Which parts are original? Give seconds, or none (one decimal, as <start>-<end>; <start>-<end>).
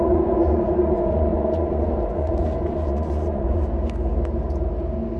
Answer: 3.6-5.2